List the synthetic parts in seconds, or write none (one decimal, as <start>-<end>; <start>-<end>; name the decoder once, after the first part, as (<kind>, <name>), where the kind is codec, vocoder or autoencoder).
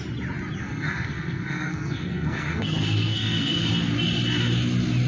0.6-3.7 (codec, SNAC)